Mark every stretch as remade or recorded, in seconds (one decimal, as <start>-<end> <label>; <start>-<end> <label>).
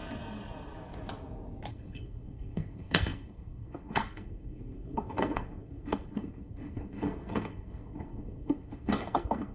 0.0-1.7 recorded; 1.7-9.5 remade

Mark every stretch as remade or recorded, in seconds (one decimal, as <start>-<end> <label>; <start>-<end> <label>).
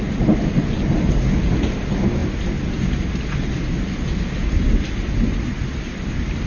0.0-6.5 recorded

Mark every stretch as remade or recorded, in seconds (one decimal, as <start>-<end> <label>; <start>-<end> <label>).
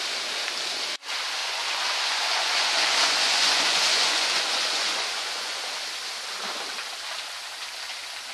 0.0-1.4 recorded; 1.4-5.6 remade; 5.6-8.3 recorded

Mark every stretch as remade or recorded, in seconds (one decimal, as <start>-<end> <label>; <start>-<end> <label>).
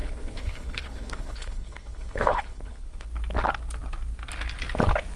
0.0-3.1 remade; 3.1-5.2 recorded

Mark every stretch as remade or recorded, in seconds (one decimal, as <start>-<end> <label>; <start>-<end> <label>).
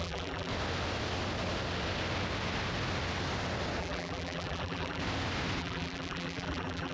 0.0-0.5 remade; 0.5-3.8 recorded; 3.8-5.0 remade; 5.0-5.6 recorded; 5.6-6.9 remade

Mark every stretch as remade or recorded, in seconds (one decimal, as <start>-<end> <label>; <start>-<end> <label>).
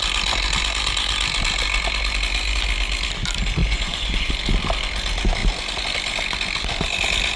0.0-3.6 recorded; 3.6-4.3 remade; 4.3-7.4 recorded